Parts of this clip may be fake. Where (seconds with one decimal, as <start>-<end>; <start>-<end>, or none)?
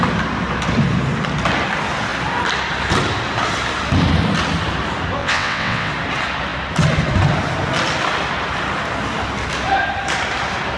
5.2-5.9